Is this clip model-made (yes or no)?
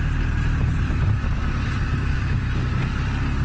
no